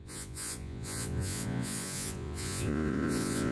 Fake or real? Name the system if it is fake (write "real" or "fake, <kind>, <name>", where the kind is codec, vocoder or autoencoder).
fake, vocoder, Vocos